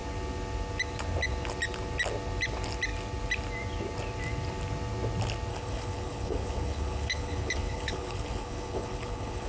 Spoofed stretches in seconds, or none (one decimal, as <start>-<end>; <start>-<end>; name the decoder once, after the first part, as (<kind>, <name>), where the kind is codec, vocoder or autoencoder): 5.5-9.5 (codec, HILCodec)